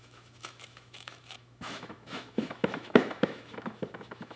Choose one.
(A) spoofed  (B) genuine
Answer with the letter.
A